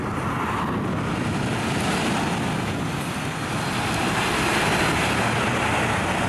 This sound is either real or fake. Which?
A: real